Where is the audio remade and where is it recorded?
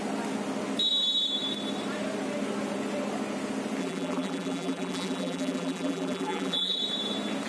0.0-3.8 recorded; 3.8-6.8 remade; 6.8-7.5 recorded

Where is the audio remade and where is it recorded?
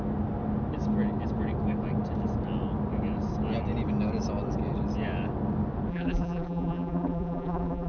0.0-5.9 recorded; 5.9-7.9 remade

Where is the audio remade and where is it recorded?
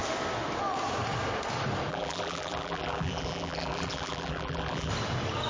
0.0-1.9 recorded; 1.9-4.9 remade; 4.9-5.5 recorded